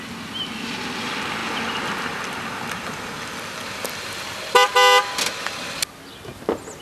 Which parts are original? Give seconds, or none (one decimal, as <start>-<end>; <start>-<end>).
0.0-6.8